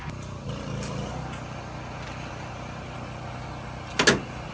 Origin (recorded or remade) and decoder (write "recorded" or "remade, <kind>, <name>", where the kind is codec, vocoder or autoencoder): recorded